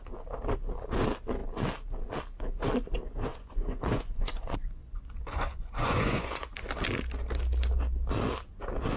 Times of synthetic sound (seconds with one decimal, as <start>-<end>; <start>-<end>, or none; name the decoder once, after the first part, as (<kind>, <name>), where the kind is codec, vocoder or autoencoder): 3.3-6.5 (vocoder, Vocos)